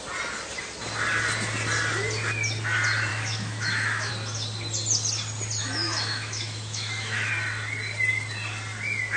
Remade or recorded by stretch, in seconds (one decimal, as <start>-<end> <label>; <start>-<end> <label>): 0.0-3.1 recorded; 3.1-4.1 remade; 4.1-5.6 recorded; 5.6-7.3 remade; 7.3-9.2 recorded